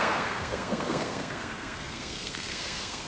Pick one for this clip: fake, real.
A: fake